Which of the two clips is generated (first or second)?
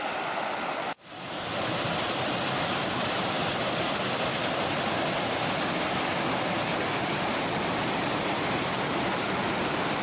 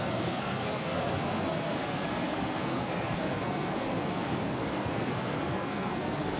second